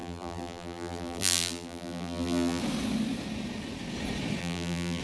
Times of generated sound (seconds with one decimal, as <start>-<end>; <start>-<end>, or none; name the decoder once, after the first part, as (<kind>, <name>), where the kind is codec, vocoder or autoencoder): 0.0-2.6 (vocoder, BigVGAN v2); 4.4-5.0